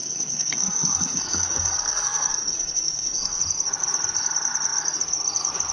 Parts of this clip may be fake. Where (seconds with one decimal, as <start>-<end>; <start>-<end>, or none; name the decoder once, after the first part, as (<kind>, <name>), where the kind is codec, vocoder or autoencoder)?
0.0-3.4 (codec, SNAC)